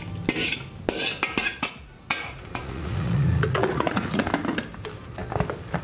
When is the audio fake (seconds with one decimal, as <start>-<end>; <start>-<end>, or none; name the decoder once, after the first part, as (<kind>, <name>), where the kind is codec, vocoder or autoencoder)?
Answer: 1.4-4.3 (vocoder, Vocos)